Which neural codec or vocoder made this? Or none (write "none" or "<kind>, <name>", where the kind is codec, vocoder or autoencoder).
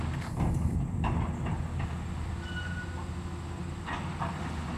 none